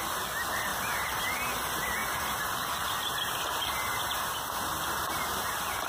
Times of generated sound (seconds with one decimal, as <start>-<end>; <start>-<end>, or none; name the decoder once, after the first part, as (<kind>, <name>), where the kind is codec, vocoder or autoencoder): 0.7-1.2 (vocoder, BigVGAN v2); 2.0-5.5